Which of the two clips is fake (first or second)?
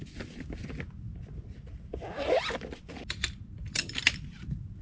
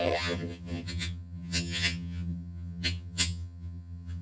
second